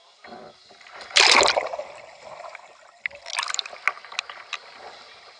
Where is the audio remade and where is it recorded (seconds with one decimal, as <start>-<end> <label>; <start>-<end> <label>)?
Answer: 0.0-5.4 recorded